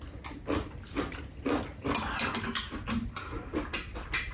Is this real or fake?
real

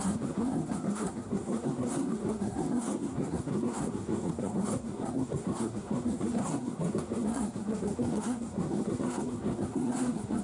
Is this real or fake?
fake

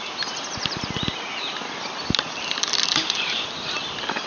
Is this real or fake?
real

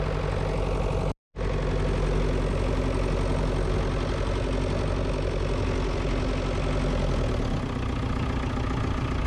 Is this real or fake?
real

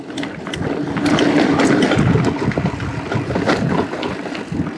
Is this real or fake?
real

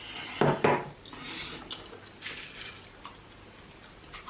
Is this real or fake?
real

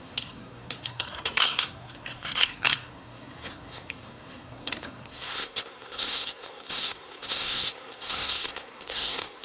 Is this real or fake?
fake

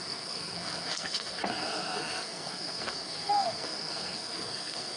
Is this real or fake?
fake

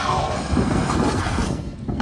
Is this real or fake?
fake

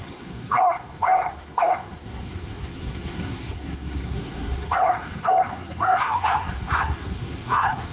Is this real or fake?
fake